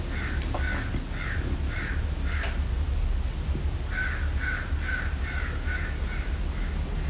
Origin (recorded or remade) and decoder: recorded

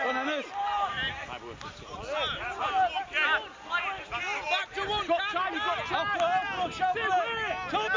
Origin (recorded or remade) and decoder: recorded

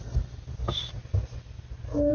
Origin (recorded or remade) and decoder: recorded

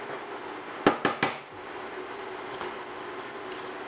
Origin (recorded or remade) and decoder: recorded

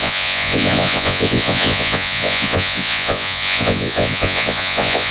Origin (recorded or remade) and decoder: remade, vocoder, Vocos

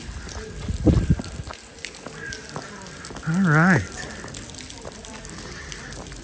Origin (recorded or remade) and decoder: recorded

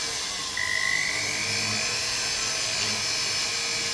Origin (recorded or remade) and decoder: recorded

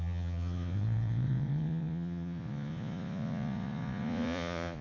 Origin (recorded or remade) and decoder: remade, vocoder, Vocos